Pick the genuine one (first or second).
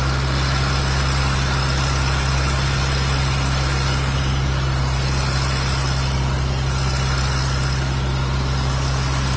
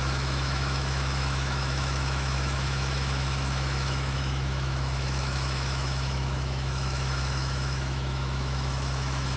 first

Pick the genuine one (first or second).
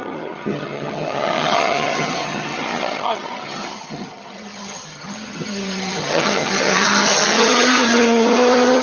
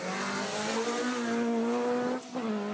second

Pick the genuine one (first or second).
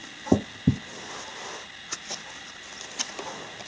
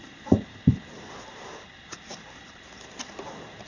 first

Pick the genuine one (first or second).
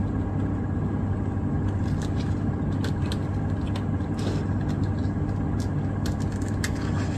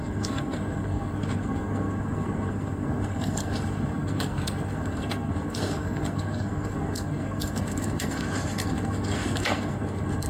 first